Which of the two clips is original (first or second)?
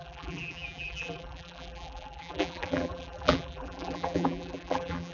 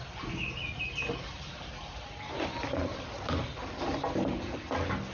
second